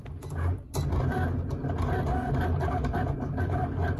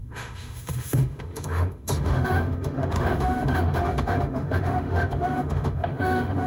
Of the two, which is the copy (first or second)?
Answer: second